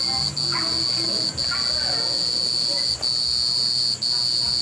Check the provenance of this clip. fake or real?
real